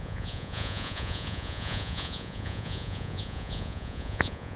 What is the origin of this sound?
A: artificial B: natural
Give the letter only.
A